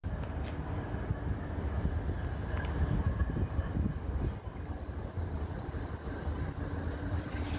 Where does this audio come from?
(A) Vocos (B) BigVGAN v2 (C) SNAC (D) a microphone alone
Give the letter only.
D